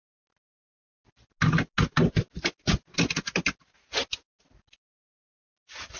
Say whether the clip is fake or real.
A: real